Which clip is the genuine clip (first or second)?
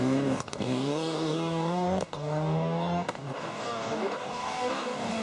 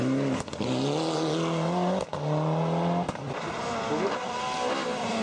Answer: second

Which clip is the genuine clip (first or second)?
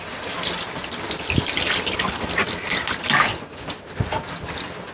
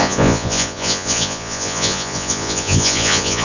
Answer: first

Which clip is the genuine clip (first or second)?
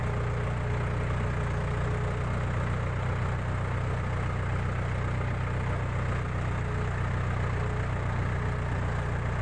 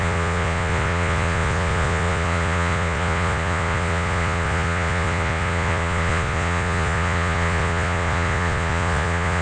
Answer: first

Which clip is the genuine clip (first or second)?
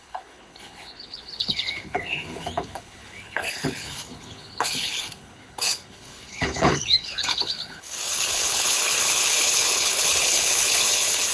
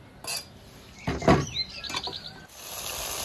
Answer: second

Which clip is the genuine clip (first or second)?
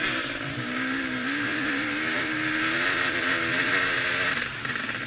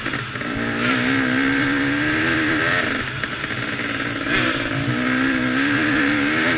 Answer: second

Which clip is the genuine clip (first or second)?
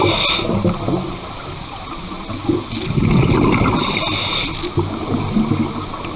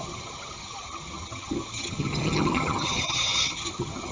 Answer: first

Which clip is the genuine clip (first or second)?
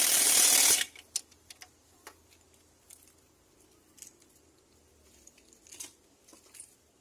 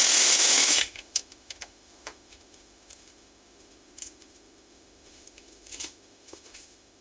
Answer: first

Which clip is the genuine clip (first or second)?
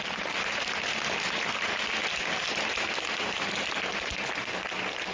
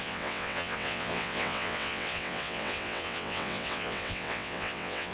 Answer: first